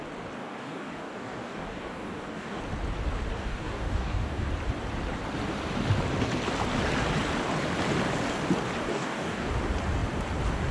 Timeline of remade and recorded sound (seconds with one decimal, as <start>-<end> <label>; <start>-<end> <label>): 0.0-0.4 recorded; 0.4-2.6 remade; 2.6-3.3 recorded; 3.3-4.5 remade; 4.5-8.9 recorded; 8.9-9.5 remade; 9.5-10.7 recorded